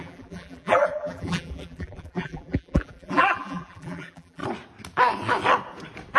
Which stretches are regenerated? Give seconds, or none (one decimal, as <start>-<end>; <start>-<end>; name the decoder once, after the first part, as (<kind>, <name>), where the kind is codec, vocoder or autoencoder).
0.0-4.4 (vocoder, BigVGAN v2)